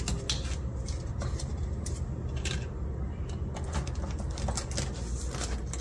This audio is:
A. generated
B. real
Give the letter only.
B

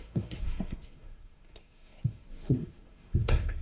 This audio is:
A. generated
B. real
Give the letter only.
A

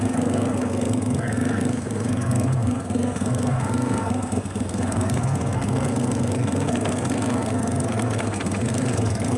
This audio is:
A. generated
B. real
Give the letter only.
A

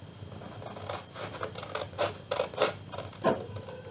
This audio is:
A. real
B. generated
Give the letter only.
A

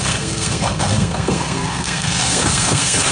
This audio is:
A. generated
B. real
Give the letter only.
A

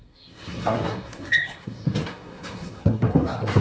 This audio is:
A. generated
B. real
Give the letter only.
A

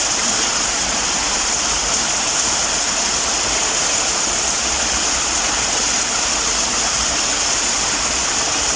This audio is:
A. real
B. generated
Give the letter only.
A